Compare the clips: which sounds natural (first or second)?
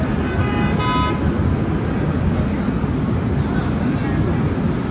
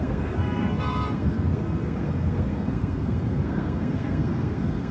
first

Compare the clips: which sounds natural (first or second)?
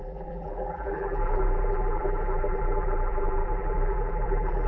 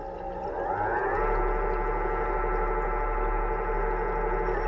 second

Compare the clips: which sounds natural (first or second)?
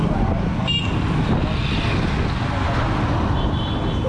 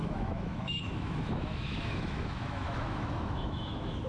first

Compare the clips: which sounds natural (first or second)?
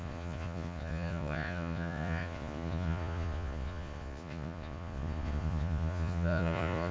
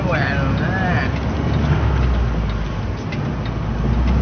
second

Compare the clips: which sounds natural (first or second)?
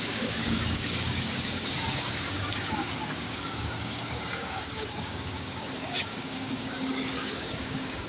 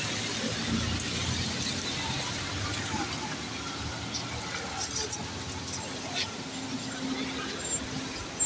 second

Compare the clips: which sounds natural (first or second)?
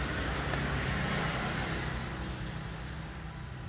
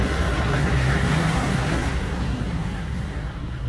first